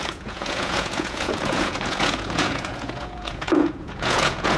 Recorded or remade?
remade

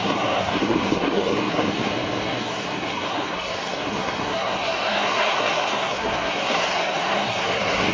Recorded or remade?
remade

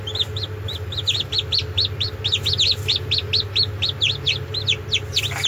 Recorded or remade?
recorded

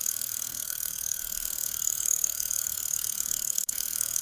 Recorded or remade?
remade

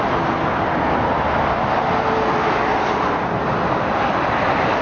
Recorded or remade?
recorded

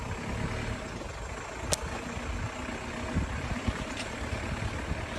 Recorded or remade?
recorded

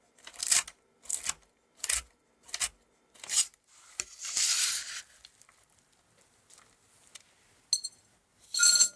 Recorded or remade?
recorded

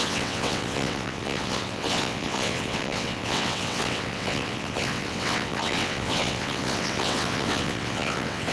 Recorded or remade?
remade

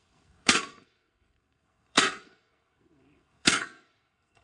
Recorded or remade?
remade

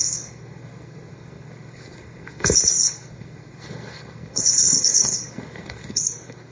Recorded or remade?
remade